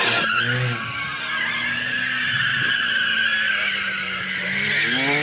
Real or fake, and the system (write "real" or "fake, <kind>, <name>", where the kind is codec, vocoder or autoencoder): real